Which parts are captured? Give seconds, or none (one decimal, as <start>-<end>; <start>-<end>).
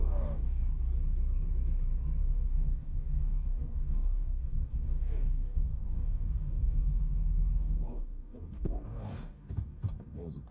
0.6-2.2